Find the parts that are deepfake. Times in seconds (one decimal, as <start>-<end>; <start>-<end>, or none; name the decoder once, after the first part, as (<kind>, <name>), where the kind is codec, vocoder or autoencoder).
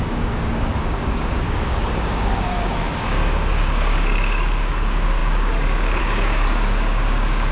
0.0-7.5 (codec, DAC)